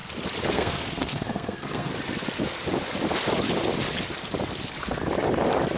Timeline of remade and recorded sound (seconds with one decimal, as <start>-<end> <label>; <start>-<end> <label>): 0.0-0.5 recorded; 0.5-1.9 remade; 1.9-5.8 recorded